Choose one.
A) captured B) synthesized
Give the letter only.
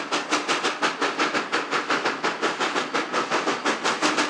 A